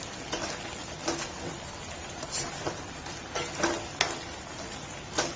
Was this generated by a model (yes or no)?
no